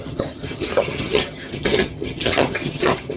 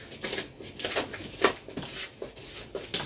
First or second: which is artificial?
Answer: first